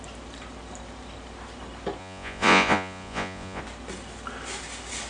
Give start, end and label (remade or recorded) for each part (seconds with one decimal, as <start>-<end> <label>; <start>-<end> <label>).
0.0-2.0 recorded; 2.0-3.6 remade; 3.6-5.1 recorded